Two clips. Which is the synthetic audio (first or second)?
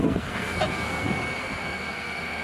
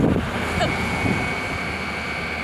first